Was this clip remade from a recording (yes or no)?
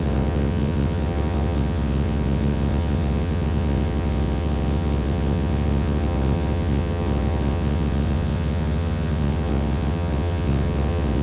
yes